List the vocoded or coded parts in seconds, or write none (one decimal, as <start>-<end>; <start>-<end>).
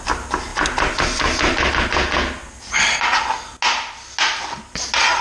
none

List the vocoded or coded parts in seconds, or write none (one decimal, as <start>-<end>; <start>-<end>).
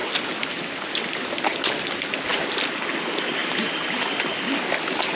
none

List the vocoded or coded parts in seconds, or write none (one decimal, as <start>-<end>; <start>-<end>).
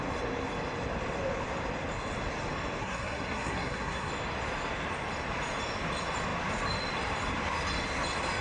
2.8-4.1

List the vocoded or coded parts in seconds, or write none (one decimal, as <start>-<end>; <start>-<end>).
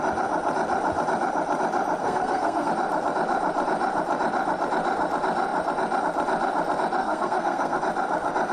2.0-2.7; 7.0-7.8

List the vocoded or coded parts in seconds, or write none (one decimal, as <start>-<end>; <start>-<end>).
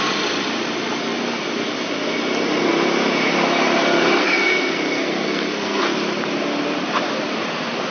4.2-5.8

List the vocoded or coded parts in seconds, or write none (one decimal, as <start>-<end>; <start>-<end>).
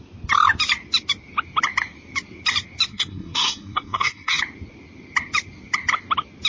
2.9-4.4